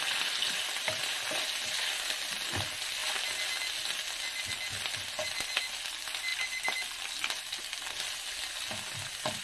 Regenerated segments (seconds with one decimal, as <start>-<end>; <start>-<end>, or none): none